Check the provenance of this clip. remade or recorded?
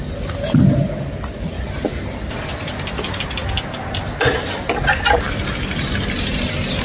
recorded